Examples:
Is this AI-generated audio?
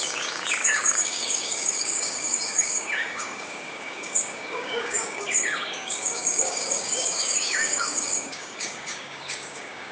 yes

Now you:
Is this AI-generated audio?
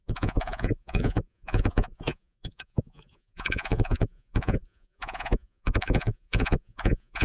yes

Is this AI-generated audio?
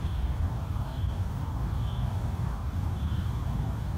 yes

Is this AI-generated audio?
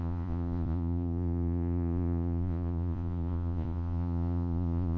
yes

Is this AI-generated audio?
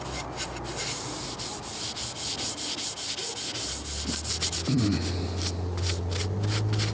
no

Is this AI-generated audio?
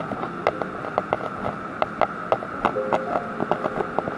no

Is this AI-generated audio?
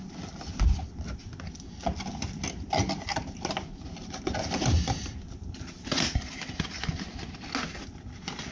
no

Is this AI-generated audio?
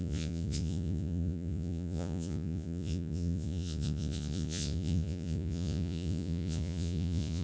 yes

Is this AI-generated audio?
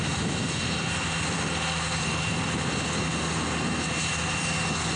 no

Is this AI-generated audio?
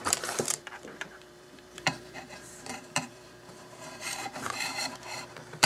yes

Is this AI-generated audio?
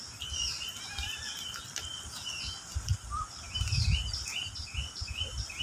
no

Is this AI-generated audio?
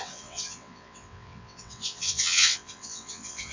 yes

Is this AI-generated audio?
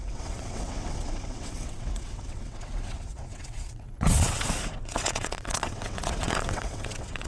yes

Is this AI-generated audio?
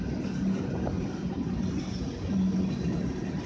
no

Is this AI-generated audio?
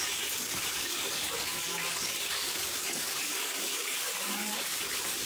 yes